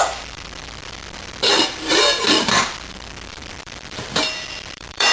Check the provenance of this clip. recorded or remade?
remade